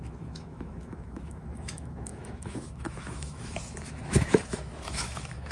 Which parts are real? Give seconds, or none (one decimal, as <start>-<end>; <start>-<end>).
none